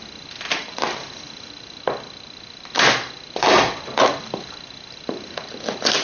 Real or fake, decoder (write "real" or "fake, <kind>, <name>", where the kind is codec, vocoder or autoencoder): real